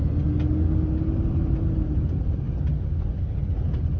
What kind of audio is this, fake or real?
real